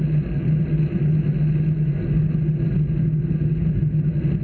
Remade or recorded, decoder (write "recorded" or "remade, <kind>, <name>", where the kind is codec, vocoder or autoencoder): recorded